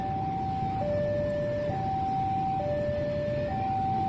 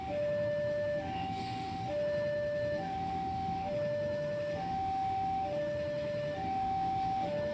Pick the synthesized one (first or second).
second